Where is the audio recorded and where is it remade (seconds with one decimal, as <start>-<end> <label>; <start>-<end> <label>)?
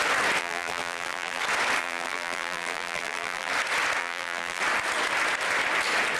0.0-0.4 recorded; 0.4-1.4 remade; 1.4-1.8 recorded; 1.8-3.5 remade; 3.5-4.0 recorded; 4.0-4.6 remade; 4.6-6.2 recorded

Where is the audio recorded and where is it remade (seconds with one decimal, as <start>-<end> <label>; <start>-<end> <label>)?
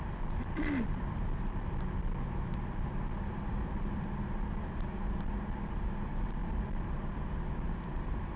0.0-8.4 remade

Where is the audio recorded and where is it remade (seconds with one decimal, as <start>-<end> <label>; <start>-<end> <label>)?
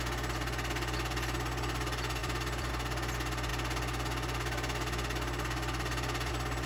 0.0-2.2 recorded; 2.2-2.7 remade; 2.7-6.7 recorded